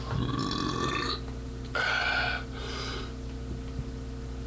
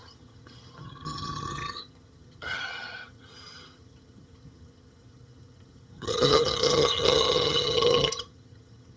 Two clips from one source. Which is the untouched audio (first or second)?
first